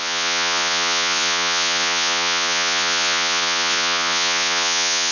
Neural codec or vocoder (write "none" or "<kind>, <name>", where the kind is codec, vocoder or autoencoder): vocoder, Vocos